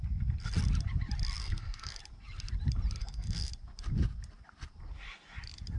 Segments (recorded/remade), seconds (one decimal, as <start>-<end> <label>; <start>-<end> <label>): 0.0-1.4 recorded; 1.4-2.0 remade; 2.0-3.0 recorded; 3.0-3.5 remade; 3.5-5.8 recorded